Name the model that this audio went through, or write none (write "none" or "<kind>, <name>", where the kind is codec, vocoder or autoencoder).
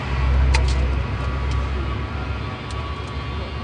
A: none